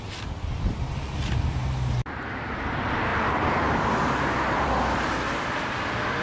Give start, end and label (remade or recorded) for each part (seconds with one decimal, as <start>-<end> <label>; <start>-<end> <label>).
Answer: 0.0-1.6 recorded; 1.6-2.6 remade; 2.6-3.1 recorded; 3.1-5.0 remade; 5.0-6.2 recorded